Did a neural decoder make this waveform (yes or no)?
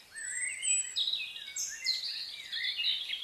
no